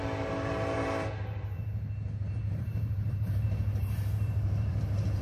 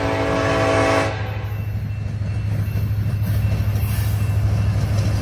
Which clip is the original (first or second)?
second